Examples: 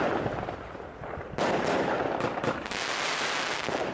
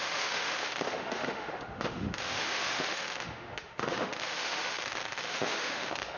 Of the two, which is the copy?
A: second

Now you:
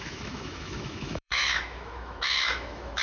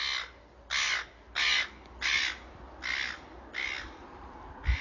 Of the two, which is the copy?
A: first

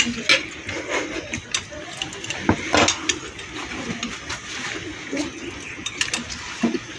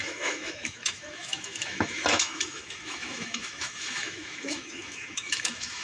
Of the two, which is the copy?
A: second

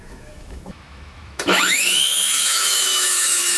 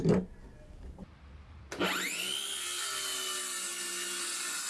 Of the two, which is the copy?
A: first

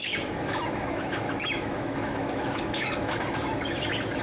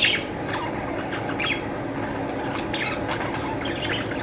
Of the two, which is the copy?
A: first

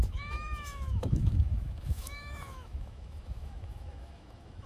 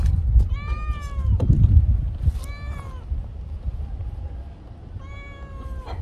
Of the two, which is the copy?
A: first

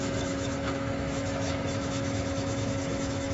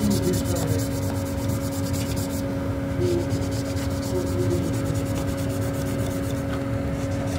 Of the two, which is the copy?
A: first